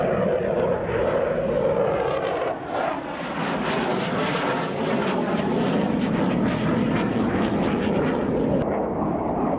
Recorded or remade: recorded